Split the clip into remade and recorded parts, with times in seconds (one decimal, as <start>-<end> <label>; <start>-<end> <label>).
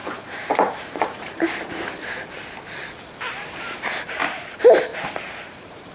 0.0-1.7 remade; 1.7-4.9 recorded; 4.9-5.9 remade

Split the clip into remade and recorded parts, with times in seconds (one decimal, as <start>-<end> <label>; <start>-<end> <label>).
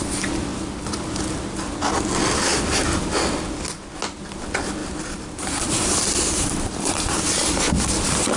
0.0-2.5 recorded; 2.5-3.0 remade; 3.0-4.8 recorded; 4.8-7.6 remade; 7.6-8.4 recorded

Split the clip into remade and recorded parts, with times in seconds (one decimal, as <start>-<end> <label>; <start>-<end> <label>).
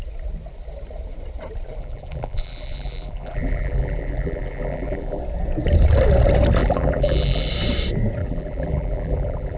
0.0-1.8 recorded; 1.8-5.2 remade; 5.2-6.6 recorded; 6.6-7.5 remade; 7.5-8.2 recorded; 8.2-9.6 remade